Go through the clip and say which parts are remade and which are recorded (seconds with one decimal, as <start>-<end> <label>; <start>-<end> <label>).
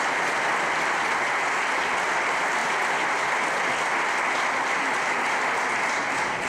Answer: 0.0-6.5 recorded